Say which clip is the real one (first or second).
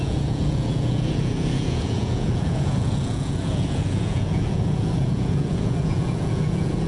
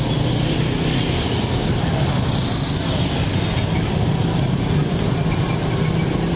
second